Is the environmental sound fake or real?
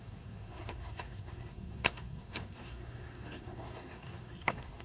fake